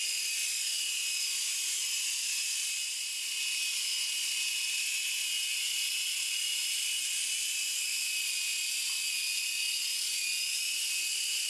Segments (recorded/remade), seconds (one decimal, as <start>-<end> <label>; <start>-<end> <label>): 0.0-11.5 recorded